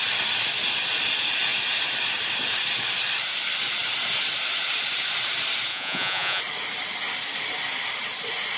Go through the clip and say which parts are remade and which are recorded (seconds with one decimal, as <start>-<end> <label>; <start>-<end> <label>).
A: 0.0-5.7 recorded; 5.7-6.4 remade; 6.4-8.6 recorded